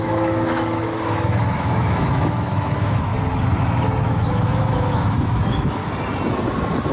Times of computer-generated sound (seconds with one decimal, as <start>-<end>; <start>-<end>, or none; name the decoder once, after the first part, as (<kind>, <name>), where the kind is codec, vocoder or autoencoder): 0.0-3.1 (autoencoder, DAC-VAE); 4.0-5.8